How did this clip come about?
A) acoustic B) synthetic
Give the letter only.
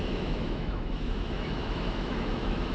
B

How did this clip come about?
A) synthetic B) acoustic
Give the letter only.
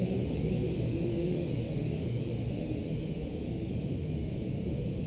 A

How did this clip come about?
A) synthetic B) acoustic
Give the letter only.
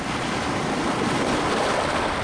B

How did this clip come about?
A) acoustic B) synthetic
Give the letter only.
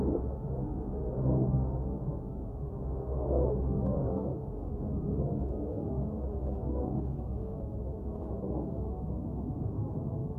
B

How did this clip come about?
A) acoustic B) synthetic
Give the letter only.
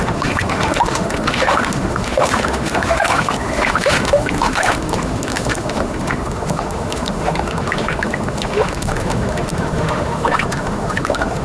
B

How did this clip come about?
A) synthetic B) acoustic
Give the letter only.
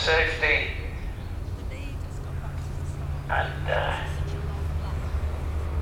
B